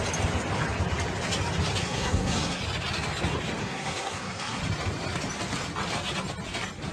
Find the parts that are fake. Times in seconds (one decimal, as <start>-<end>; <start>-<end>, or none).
1.8-2.6; 3.6-4.6